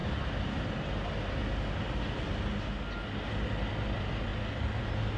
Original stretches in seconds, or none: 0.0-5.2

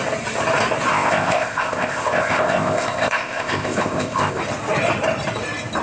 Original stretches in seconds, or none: 0.0-0.9; 4.4-5.8

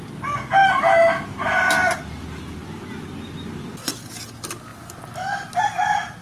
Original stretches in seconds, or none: 0.0-6.2

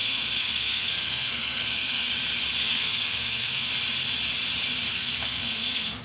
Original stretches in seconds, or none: 2.1-2.6; 3.7-4.9

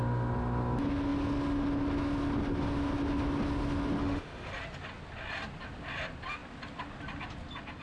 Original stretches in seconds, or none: 0.0-4.0; 4.5-7.8